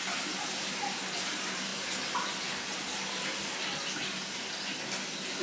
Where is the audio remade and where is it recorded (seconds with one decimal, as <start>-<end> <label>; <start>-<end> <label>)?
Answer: 0.0-5.4 recorded